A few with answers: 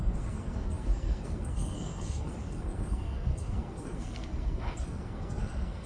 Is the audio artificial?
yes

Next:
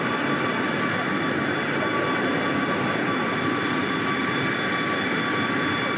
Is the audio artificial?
no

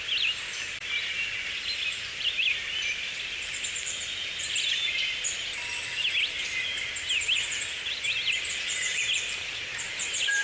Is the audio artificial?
yes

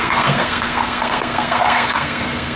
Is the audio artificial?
yes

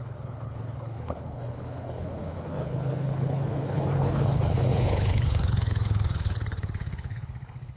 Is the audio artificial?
yes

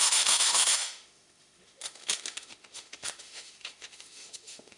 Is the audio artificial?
yes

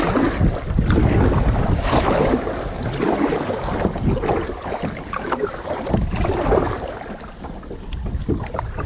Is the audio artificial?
no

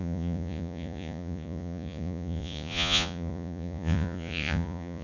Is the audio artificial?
yes